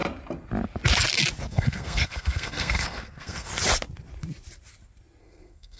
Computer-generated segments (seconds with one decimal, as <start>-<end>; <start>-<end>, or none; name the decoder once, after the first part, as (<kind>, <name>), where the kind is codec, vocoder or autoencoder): 1.5-3.5 (codec, SNAC); 5.2-5.8